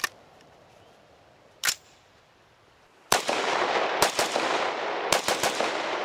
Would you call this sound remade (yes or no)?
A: yes